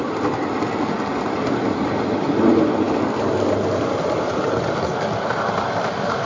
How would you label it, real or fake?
real